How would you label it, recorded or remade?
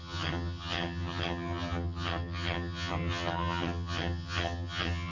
remade